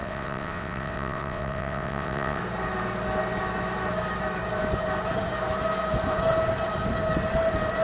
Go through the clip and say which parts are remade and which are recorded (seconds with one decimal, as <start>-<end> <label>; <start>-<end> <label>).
0.0-2.4 remade; 2.4-7.8 recorded